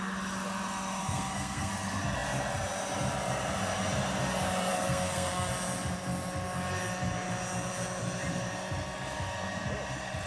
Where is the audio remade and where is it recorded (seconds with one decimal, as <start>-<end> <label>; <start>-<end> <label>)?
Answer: 0.0-1.0 recorded; 1.0-1.7 remade; 1.7-4.7 recorded; 4.7-5.5 remade; 5.5-10.3 recorded